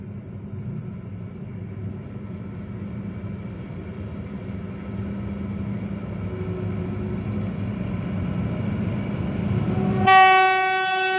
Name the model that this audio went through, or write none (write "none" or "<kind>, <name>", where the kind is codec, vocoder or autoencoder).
none